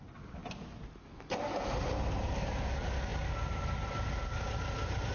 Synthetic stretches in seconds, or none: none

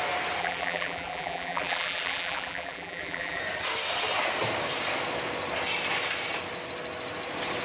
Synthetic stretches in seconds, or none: 0.4-3.4 (vocoder, BigVGAN v2)